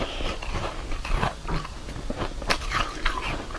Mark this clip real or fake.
real